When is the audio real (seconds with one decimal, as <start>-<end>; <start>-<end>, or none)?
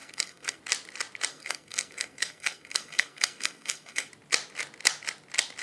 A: 0.6-1.3; 4.1-5.6